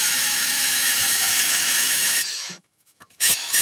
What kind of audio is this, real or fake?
fake